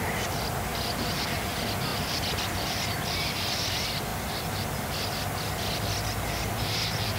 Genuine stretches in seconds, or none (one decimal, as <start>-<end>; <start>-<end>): 0.0-7.2